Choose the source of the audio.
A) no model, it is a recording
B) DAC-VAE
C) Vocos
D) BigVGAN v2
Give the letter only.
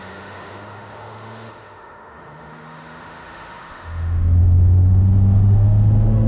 B